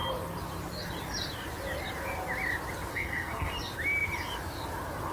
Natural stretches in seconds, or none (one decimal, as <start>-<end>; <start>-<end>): 0.0-2.9; 3.5-5.1